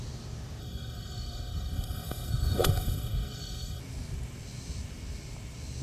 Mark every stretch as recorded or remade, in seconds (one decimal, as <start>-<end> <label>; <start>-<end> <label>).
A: 0.0-0.6 recorded; 0.6-3.8 remade; 3.8-5.8 recorded